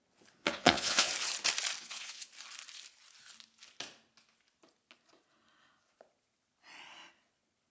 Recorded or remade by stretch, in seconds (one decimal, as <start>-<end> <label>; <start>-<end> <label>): 0.0-0.4 recorded; 0.4-1.1 remade; 1.1-1.8 recorded; 1.8-2.3 remade; 2.3-7.7 recorded